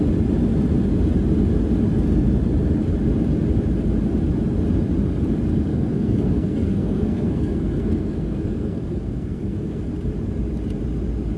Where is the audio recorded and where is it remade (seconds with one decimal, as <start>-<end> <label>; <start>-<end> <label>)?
0.0-5.7 recorded; 5.7-9.9 remade; 9.9-11.4 recorded